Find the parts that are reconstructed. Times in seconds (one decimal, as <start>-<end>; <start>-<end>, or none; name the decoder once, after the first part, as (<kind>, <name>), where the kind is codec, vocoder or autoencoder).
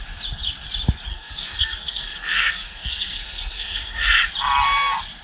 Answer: 1.1-4.2 (codec, SNAC)